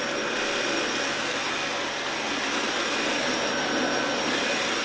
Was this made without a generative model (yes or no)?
yes